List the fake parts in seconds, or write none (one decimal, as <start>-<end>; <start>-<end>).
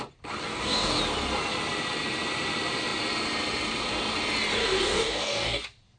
0.5-1.0; 4.6-5.6